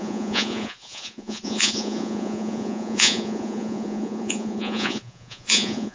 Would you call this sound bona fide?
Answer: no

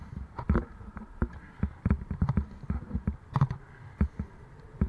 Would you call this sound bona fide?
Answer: yes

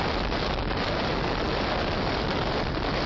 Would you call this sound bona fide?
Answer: yes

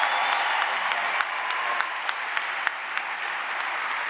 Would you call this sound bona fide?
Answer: yes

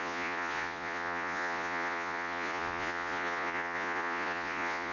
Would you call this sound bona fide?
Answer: no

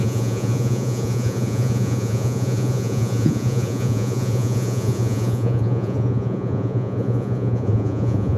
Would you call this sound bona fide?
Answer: no